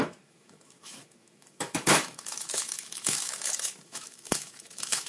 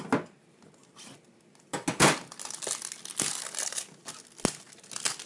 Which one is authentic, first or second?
second